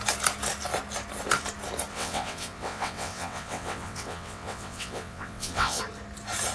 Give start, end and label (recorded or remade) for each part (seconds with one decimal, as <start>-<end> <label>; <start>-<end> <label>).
0.0-1.9 recorded; 1.9-5.8 remade; 5.8-6.5 recorded